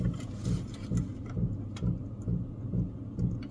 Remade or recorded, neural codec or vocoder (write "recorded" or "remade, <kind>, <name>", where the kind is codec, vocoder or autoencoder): recorded